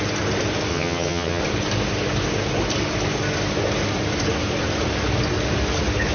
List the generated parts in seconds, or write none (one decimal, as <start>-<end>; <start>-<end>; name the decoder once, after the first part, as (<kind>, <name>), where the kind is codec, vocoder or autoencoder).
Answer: 0.7-1.4 (vocoder, HiFi-GAN)

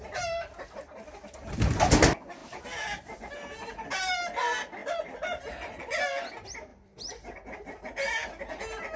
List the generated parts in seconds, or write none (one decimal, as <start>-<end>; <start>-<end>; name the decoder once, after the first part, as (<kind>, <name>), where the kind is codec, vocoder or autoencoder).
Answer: none